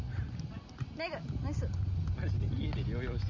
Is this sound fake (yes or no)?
no